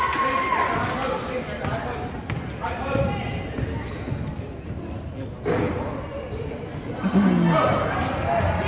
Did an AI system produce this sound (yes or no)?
no